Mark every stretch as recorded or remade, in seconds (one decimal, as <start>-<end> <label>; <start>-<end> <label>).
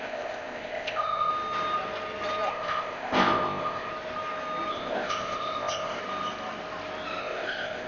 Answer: 0.0-1.3 remade; 1.3-2.5 recorded; 2.5-3.9 remade; 3.9-4.7 recorded; 4.7-6.0 remade; 6.0-7.2 recorded; 7.2-7.9 remade